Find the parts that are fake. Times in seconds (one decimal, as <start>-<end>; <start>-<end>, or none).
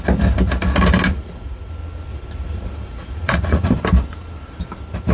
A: 1.1-1.7; 2.1-3.7